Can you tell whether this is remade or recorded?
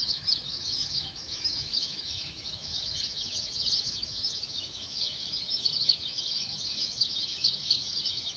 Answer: remade